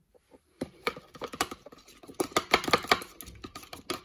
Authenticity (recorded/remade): recorded